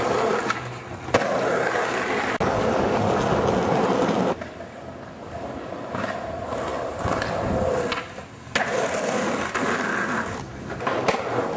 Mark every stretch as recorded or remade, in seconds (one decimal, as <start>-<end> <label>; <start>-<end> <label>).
0.0-11.6 recorded